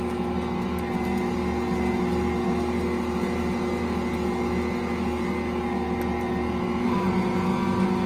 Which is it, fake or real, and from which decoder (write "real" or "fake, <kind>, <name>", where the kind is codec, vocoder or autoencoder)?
real